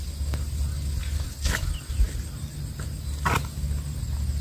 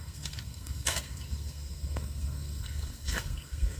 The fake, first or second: second